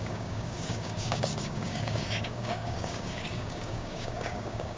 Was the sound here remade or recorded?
remade